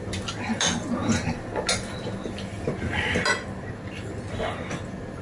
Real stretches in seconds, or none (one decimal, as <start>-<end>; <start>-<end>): 0.0-5.2

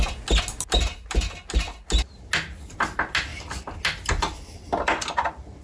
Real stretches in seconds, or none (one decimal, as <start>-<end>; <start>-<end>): 0.0-5.6

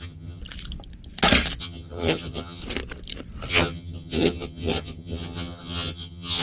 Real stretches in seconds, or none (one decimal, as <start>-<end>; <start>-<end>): 0.4-1.6; 2.6-3.5